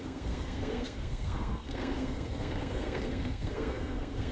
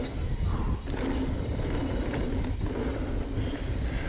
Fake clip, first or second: first